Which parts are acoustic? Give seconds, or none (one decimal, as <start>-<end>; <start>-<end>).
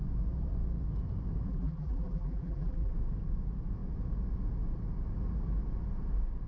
0.0-1.5; 2.9-6.5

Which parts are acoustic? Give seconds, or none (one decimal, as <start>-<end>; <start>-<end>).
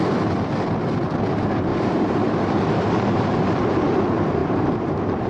0.0-1.7; 4.0-4.4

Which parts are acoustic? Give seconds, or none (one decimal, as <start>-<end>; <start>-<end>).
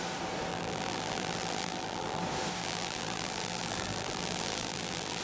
0.0-0.5; 2.2-2.6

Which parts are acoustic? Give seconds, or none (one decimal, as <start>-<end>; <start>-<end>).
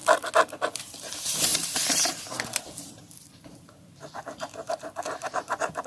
0.0-0.8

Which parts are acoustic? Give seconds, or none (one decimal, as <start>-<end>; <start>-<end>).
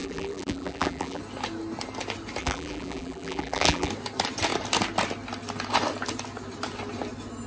1.2-2.4; 3.9-7.5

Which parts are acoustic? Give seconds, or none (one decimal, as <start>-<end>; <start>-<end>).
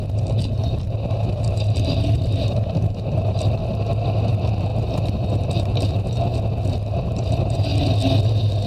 3.6-4.2; 4.7-5.5; 6.3-7.3; 7.7-8.7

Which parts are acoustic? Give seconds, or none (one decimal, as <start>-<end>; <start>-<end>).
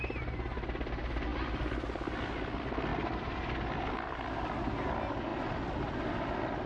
0.0-6.7